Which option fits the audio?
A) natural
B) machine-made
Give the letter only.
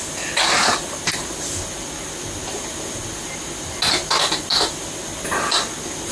A